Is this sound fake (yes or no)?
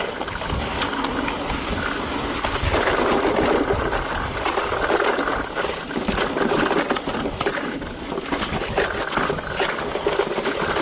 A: no